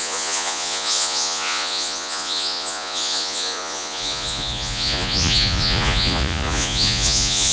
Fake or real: fake